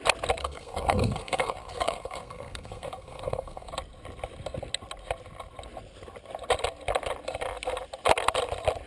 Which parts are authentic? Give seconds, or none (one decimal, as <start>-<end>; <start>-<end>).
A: 0.0-0.4; 3.7-8.9